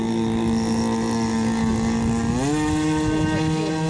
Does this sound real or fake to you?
real